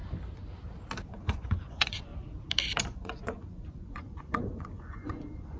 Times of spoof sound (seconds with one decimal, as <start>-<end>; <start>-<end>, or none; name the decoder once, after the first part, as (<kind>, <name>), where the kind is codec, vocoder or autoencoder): 1.1-2.1 (vocoder, Vocos); 2.8-5.6